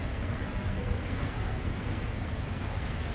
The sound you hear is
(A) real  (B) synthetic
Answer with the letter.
B